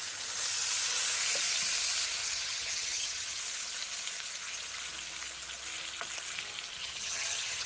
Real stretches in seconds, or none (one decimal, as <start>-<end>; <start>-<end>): 0.0-2.2; 3.4-6.8